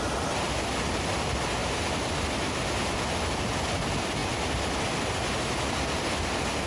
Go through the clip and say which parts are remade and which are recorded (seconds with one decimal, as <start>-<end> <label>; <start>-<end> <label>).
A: 0.0-6.7 recorded